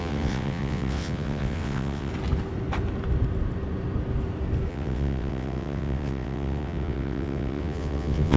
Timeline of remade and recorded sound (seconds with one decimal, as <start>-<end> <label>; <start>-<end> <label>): 0.0-2.1 remade; 2.1-4.7 recorded; 4.7-8.4 remade